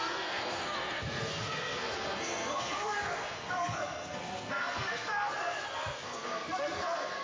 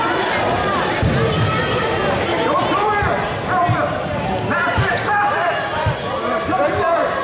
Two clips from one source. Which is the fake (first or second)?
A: first